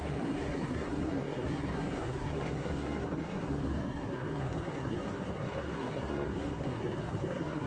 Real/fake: fake